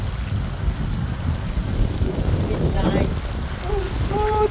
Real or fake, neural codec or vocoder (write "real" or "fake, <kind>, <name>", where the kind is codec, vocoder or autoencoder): real